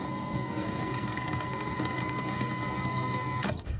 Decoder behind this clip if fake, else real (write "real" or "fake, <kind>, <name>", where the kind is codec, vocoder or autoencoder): fake, codec, SNAC